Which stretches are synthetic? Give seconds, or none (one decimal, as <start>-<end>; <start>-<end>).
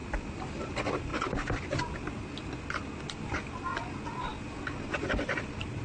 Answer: none